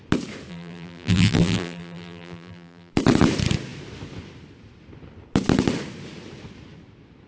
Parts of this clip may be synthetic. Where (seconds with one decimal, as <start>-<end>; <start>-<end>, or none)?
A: 0.5-2.9